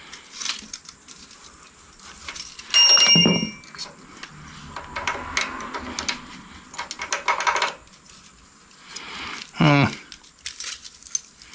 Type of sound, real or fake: real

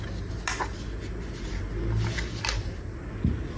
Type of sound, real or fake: real